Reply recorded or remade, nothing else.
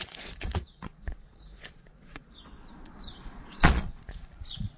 remade